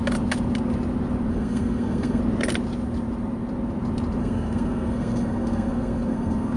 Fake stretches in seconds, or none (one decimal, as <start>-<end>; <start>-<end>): 1.3-2.2; 4.2-6.6